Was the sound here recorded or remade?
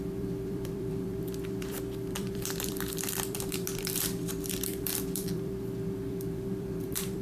remade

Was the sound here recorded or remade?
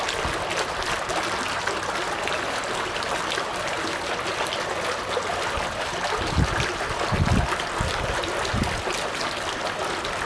recorded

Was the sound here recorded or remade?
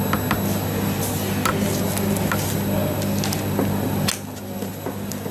recorded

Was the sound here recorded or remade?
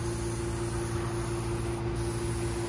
recorded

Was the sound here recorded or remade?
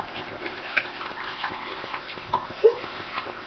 remade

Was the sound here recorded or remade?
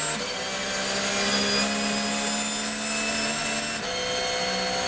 recorded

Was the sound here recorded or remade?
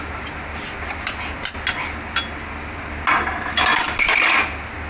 recorded